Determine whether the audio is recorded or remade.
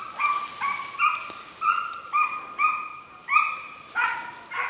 recorded